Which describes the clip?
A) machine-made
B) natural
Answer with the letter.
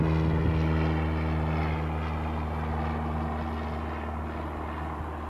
B